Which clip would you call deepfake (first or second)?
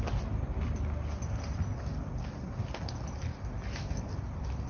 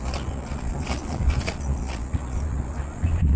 second